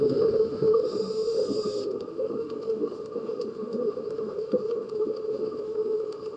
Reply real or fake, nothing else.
fake